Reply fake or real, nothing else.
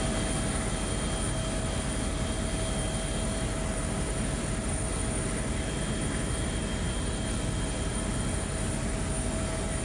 real